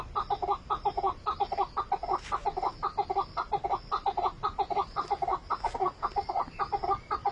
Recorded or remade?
recorded